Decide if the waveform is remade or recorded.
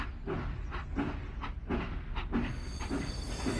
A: recorded